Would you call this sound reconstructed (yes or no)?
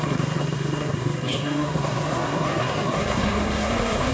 yes